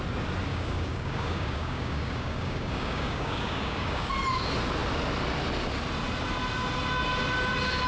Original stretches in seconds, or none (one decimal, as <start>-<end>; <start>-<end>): 0.0-0.5; 4.1-7.9